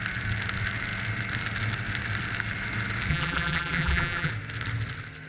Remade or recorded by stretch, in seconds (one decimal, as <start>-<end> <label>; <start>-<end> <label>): 0.0-3.1 recorded; 3.1-4.3 remade; 4.3-5.3 recorded

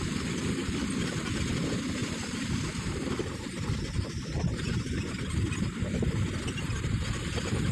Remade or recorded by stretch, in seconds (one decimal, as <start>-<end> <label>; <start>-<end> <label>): 0.0-2.0 recorded; 2.0-5.9 remade; 5.9-7.7 recorded

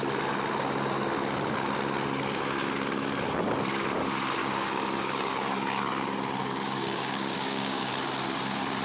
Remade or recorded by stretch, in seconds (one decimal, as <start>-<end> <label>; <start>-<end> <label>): 0.0-4.4 recorded; 4.4-5.8 remade; 5.8-6.4 recorded; 6.4-7.9 remade; 7.9-8.8 recorded

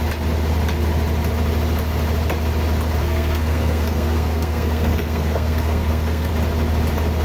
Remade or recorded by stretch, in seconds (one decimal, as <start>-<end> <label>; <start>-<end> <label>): 0.0-3.0 recorded; 3.0-6.3 remade; 6.3-7.2 recorded

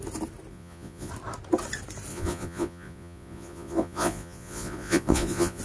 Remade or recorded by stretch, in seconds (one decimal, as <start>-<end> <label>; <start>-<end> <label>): 0.0-0.5 recorded; 0.5-1.1 remade; 1.1-2.1 recorded; 2.1-5.6 remade

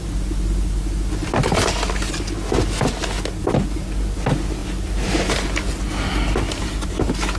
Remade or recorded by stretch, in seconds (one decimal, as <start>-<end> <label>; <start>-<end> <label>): 0.0-7.4 recorded